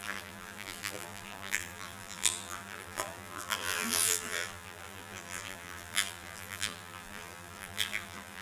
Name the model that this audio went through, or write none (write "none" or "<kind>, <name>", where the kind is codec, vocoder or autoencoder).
vocoder, BigVGAN v2